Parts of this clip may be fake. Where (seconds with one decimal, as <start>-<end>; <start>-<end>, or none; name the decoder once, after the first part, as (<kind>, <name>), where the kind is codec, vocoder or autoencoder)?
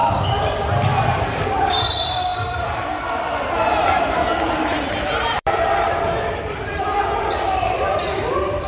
0.6-8.7 (vocoder, BigVGAN v2)